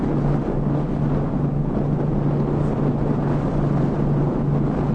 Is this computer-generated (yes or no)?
no